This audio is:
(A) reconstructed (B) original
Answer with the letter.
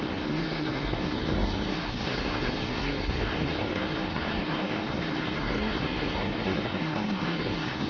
A